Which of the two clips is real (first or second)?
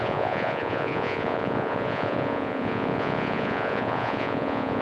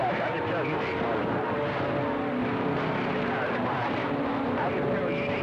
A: second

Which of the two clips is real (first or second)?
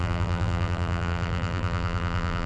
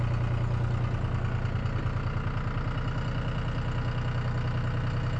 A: second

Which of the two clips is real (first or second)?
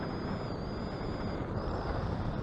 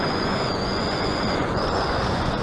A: first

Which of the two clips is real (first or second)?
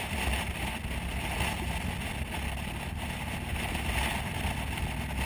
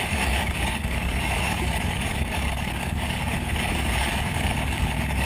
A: first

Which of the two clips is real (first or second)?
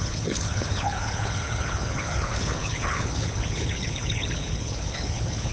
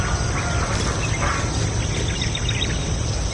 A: second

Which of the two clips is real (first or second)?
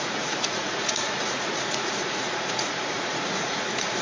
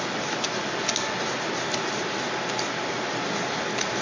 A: second